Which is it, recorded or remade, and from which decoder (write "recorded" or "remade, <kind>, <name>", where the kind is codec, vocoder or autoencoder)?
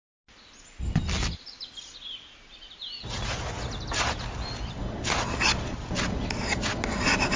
recorded